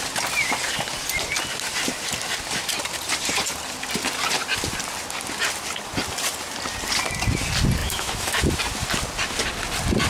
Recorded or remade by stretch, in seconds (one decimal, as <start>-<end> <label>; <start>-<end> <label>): 0.0-7.8 recorded; 7.8-8.4 remade; 8.4-10.1 recorded